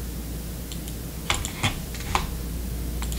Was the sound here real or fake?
real